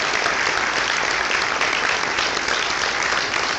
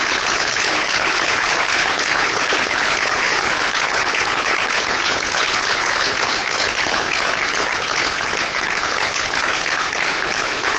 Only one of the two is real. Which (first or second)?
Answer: first